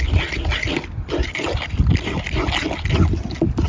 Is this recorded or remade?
recorded